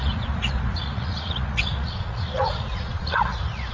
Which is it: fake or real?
fake